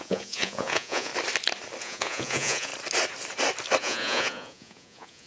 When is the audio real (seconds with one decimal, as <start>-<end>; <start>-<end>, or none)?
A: 1.1-1.8; 2.7-3.8